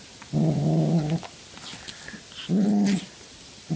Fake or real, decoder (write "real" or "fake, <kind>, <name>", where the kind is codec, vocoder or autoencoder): real